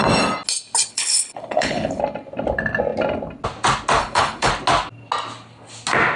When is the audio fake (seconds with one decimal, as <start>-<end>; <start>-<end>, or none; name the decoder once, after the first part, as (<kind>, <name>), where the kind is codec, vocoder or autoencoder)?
0.9-2.0 (codec, HILCodec); 4.0-4.5